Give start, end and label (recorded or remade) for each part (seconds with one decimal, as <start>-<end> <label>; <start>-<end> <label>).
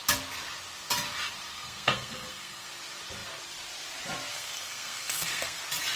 0.0-1.5 recorded; 1.5-2.7 remade; 2.7-4.3 recorded; 4.3-5.6 remade; 5.6-6.0 recorded